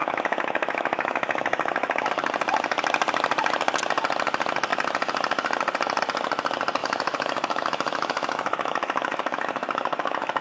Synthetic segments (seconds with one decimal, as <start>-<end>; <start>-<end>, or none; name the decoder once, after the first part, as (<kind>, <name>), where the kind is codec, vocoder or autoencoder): 0.0-2.1 (autoencoder, DAC-VAE); 6.8-10.4